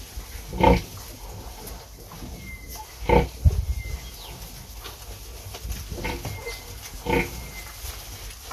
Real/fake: real